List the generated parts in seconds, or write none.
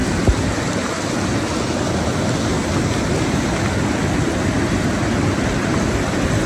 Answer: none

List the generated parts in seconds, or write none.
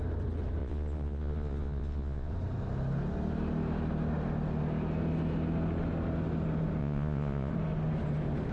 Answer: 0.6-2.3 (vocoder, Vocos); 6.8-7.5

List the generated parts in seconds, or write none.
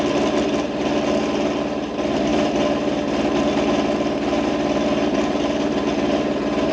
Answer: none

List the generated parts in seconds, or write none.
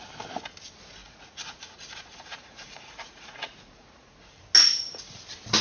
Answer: 1.0-4.4 (vocoder, Vocos)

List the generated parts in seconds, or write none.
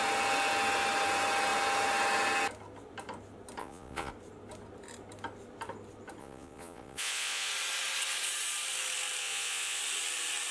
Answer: 3.6-4.1 (vocoder, Vocos); 6.2-7.5; 9.2-9.8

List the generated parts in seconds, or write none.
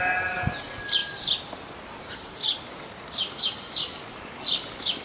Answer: none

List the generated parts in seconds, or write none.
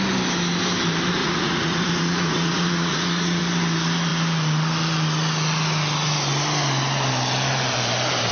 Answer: 1.2-3.4 (vocoder, Vocos)